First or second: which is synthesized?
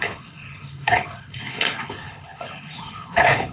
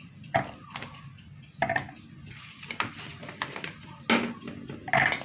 first